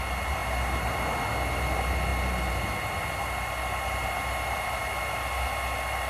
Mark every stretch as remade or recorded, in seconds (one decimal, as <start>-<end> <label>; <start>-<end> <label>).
0.0-6.1 recorded